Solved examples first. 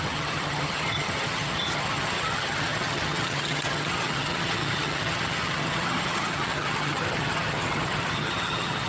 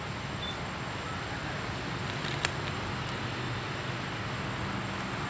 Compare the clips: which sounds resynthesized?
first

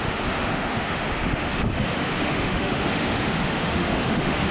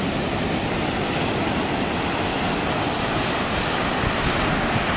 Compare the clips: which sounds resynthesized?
first